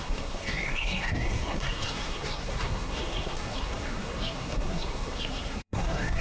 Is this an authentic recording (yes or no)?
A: no